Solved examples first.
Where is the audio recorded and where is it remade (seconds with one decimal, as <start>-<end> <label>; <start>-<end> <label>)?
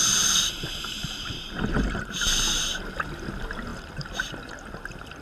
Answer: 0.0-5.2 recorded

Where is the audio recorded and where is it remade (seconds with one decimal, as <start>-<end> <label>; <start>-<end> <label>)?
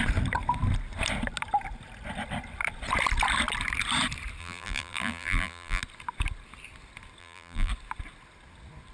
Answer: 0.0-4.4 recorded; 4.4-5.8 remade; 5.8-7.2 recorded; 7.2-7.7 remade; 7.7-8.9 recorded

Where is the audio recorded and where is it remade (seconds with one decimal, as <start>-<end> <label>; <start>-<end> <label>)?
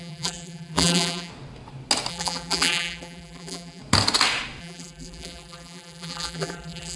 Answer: 0.0-1.3 remade; 1.3-2.1 recorded; 2.1-3.8 remade; 3.8-4.6 recorded; 4.6-7.0 remade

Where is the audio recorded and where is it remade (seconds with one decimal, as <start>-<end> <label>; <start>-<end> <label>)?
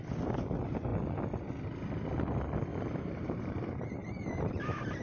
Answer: 0.0-2.7 recorded; 2.7-3.4 remade; 3.4-4.0 recorded; 4.0-5.0 remade